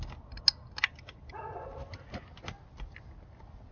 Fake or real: real